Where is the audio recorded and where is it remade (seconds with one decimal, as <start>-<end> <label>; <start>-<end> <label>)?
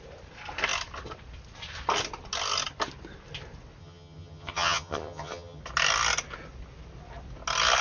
0.0-3.8 recorded; 3.8-5.6 remade; 5.6-7.8 recorded